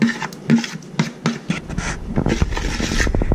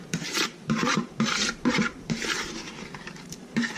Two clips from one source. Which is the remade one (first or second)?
second